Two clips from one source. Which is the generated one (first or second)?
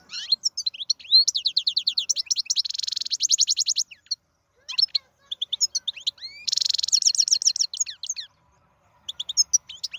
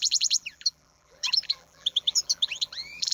second